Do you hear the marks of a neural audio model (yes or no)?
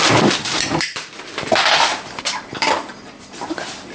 yes